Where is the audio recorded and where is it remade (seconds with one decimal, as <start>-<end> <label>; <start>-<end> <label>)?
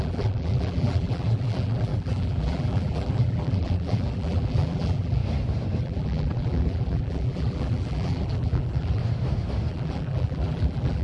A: 0.0-5.2 remade; 5.2-5.8 recorded; 5.8-9.0 remade; 9.0-9.7 recorded; 9.7-11.0 remade